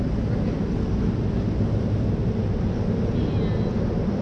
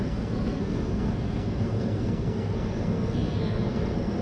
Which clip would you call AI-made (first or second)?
second